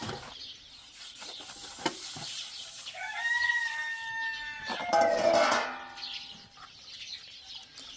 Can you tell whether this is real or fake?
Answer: real